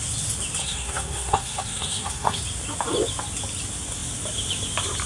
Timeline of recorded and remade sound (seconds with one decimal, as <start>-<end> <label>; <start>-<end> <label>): 0.0-0.6 recorded; 0.6-2.4 remade; 2.4-5.1 recorded